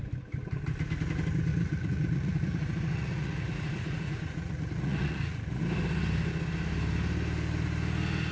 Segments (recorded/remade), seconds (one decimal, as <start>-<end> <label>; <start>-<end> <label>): 0.0-1.5 recorded; 1.5-5.6 remade; 5.6-8.3 recorded